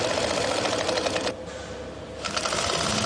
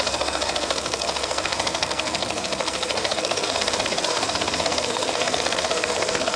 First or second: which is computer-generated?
second